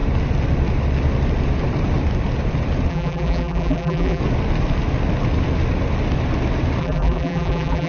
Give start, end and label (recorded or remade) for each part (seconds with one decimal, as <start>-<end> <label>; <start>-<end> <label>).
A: 0.0-2.9 recorded; 2.9-4.2 remade; 4.2-6.8 recorded; 6.8-7.9 remade